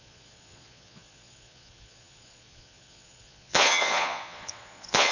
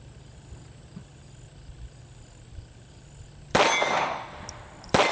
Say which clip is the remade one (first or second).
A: first